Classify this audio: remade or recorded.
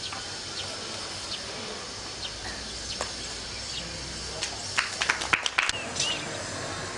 recorded